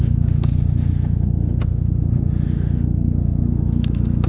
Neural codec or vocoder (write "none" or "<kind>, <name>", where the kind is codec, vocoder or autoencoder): autoencoder, DAC-VAE